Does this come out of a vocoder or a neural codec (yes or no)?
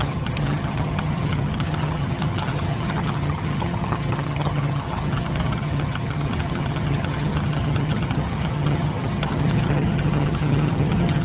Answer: yes